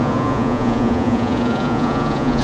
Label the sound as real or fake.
fake